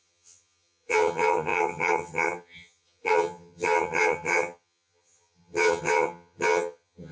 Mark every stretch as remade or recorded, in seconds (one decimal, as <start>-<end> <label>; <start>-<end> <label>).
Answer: 0.0-7.1 remade